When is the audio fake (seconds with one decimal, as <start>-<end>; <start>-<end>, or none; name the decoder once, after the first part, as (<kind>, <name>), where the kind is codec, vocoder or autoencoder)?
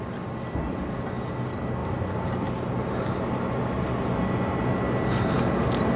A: none